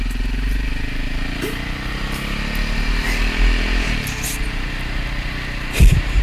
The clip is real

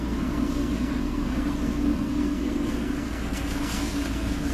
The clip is fake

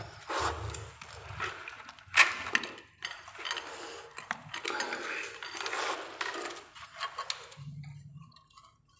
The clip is real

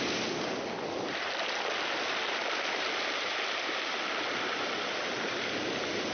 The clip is real